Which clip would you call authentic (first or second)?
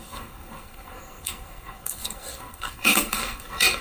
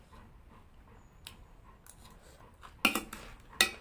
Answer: second